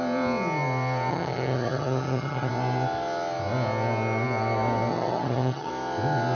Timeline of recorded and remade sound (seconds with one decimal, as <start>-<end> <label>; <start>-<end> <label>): 0.0-1.1 recorded; 1.1-2.5 remade; 2.5-4.9 recorded; 4.9-5.7 remade; 5.7-6.3 recorded